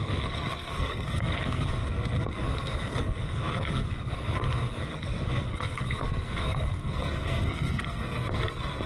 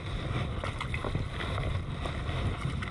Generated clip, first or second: first